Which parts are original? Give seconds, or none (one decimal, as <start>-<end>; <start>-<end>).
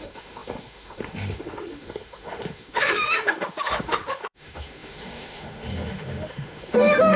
none